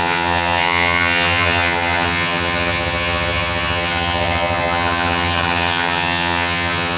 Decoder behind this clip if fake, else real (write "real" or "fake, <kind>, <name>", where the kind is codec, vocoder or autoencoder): fake, vocoder, HiFi-GAN